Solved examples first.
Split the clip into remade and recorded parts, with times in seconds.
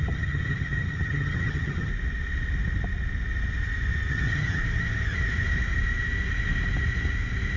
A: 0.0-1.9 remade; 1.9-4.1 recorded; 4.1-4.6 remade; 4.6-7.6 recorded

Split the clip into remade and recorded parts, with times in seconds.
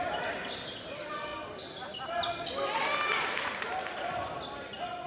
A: 0.0-5.1 recorded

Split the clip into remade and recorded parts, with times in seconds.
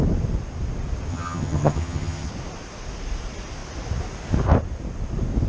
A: 0.0-1.1 recorded; 1.1-2.3 remade; 2.3-5.5 recorded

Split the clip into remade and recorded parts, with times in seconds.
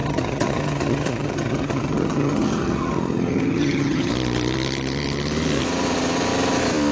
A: 0.0-4.1 remade; 4.1-6.9 recorded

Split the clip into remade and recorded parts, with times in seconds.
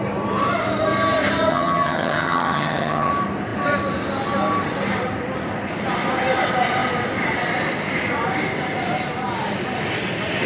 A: 0.0-1.5 recorded; 1.5-3.1 remade; 3.1-10.5 recorded